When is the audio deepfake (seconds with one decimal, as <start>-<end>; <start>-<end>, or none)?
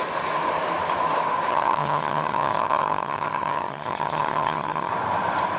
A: 1.5-4.9